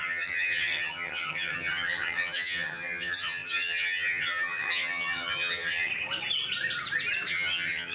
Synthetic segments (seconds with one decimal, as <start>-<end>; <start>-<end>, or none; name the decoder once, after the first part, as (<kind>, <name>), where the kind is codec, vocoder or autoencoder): 0.0-5.9 (vocoder, HiFi-GAN); 7.3-7.9